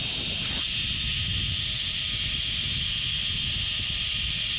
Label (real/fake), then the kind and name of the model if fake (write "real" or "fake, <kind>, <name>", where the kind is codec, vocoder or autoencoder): real